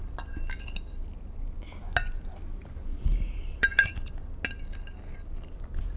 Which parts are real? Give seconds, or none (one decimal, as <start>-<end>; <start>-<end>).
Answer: 0.0-2.6; 3.9-6.0

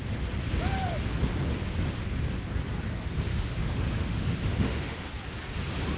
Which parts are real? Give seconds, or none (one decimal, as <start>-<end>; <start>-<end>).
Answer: 0.0-3.3; 5.1-6.0

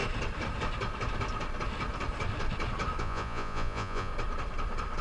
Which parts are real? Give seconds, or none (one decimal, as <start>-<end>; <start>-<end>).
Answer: 0.0-3.0; 4.1-5.0